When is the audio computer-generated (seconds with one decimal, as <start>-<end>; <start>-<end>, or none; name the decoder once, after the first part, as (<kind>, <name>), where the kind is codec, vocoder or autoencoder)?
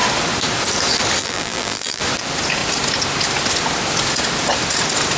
1.2-2.0 (vocoder, BigVGAN v2)